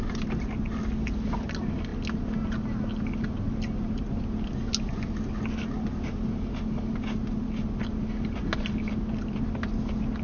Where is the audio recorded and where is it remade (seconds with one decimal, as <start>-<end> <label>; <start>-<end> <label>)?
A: 0.0-10.2 recorded